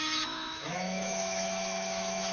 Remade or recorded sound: remade